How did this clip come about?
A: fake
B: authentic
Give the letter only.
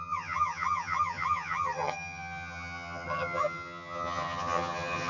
A